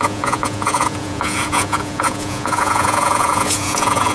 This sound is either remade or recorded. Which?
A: remade